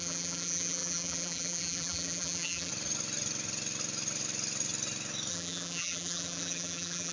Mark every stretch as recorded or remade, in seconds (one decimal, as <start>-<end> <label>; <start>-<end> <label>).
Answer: 0.0-2.7 remade; 2.7-5.3 recorded; 5.3-7.1 remade